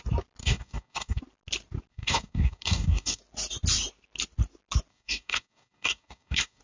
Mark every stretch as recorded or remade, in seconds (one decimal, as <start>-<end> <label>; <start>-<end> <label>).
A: 0.0-0.4 recorded; 0.4-1.2 remade; 1.2-1.9 recorded; 1.9-3.2 remade; 3.2-4.9 recorded; 4.9-6.6 remade